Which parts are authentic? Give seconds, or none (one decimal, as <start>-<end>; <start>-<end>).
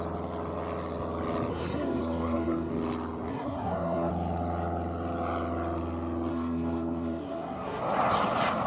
0.0-1.5; 2.7-3.3; 4.1-6.3; 7.8-8.7